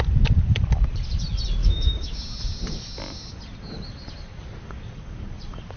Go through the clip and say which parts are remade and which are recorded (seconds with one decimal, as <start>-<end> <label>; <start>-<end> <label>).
0.0-1.6 recorded; 1.6-2.2 remade; 2.2-5.8 recorded